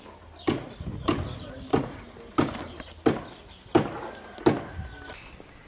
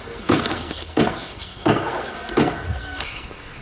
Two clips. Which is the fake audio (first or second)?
second